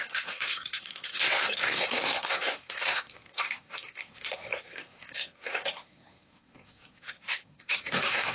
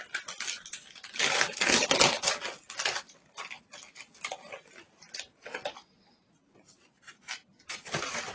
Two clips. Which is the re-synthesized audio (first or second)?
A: first